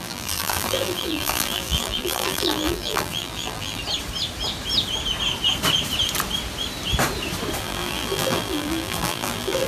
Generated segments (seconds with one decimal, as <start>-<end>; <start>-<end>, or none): 0.0-3.8; 7.6-9.7